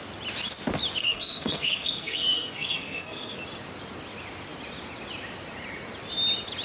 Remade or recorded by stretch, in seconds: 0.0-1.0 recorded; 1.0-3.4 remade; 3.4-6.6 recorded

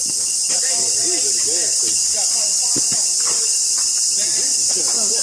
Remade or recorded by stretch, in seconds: 0.0-5.2 recorded